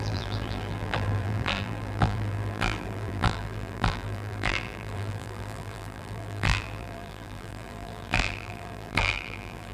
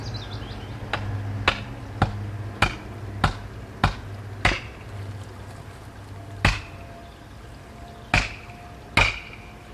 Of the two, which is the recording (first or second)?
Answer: second